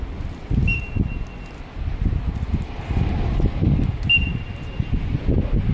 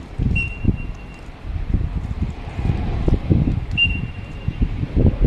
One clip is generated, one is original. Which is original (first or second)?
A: first